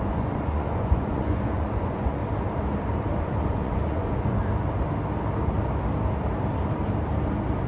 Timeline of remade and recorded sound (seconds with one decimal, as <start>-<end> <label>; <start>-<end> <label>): 0.0-2.2 remade; 2.2-3.2 recorded; 3.2-4.4 remade; 4.4-7.7 recorded